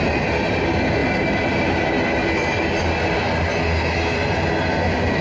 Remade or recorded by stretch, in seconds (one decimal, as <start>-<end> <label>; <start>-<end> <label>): 0.0-5.2 recorded